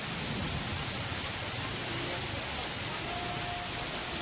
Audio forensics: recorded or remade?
recorded